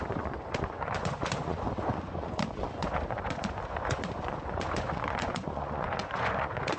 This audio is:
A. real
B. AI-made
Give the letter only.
B